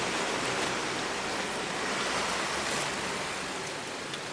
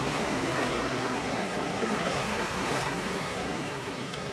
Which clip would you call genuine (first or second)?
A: first